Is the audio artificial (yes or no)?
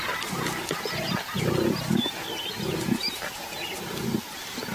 no